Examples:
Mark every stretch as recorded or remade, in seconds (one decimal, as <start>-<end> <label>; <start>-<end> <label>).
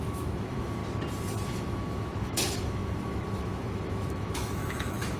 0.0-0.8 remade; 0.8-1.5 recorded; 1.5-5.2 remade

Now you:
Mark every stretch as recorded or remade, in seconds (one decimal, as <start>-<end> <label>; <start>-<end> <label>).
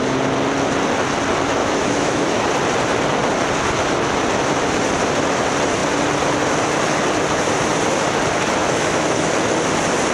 0.0-1.6 recorded; 1.6-2.5 remade; 2.5-8.6 recorded; 8.6-9.3 remade; 9.3-10.1 recorded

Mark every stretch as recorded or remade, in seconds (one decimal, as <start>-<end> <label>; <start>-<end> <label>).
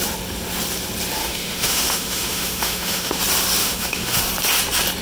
0.0-1.2 recorded; 1.2-3.2 remade; 3.2-3.6 recorded; 3.6-4.2 remade; 4.2-5.0 recorded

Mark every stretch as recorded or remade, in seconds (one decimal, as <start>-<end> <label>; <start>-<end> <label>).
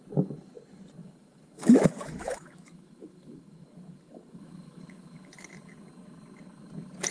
0.0-1.0 recorded; 1.0-5.3 remade; 5.3-7.1 recorded